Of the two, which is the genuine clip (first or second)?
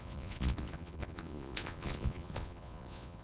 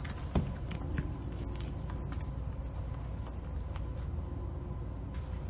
second